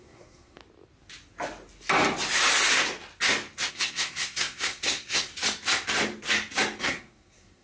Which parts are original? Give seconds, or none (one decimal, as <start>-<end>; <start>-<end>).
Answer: 0.6-3.7; 5.3-6.8